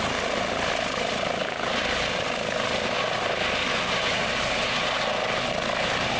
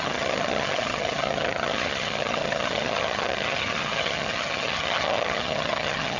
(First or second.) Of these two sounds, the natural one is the first